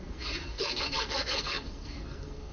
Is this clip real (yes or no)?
no